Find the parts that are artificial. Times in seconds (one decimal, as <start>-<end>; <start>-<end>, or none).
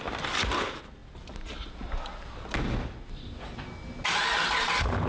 none